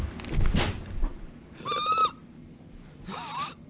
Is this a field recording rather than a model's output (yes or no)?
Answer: no